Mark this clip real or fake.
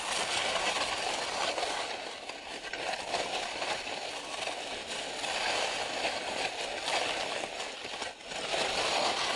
real